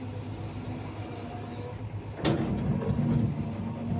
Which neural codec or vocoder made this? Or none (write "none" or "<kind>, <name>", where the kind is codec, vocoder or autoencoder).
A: none